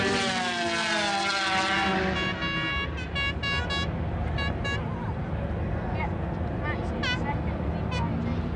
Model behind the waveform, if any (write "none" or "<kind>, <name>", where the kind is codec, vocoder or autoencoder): none